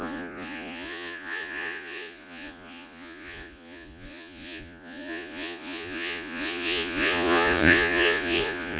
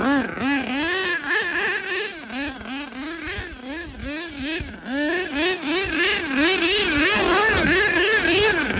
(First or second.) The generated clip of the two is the first